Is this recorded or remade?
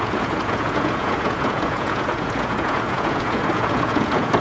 remade